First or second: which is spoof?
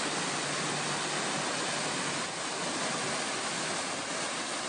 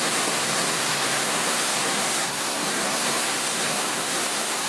second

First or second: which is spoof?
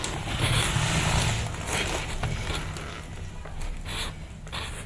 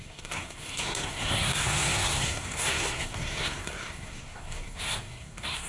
second